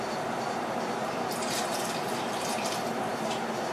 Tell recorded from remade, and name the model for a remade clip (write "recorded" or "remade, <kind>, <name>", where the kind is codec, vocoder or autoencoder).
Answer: remade, vocoder, BigVGAN v2